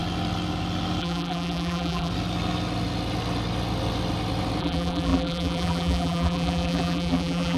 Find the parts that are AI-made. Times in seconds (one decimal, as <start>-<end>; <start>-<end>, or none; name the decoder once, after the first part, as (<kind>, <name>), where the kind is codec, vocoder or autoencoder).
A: 1.0-2.1 (vocoder, BigVGAN v2); 4.6-7.6

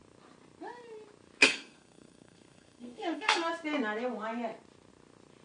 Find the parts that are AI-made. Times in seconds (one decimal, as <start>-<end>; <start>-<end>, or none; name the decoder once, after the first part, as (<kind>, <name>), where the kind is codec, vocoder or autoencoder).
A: 1.4-3.5 (codec, SNAC)